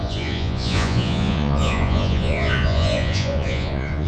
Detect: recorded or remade remade